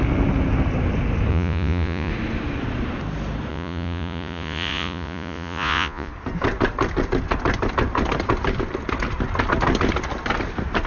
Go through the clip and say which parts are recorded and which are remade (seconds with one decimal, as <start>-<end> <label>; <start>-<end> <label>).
0.0-1.3 recorded; 1.3-2.1 remade; 2.1-3.5 recorded; 3.5-6.1 remade; 6.1-10.9 recorded